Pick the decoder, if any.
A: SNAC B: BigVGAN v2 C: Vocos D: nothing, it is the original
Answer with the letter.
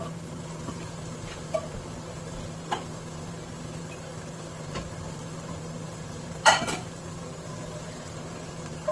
B